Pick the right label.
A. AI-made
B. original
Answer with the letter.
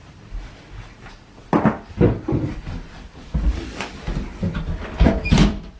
A